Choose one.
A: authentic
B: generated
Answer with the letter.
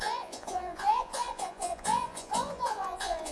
B